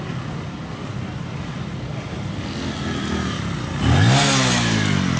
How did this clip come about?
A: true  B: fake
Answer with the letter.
A